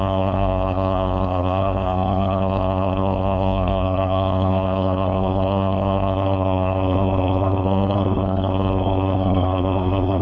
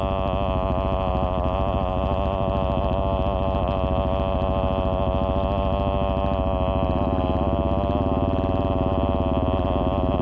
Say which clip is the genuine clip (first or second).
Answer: second